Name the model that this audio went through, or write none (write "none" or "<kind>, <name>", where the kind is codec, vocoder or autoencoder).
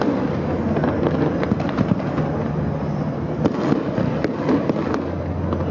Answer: none